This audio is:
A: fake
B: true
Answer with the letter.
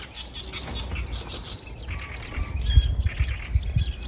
B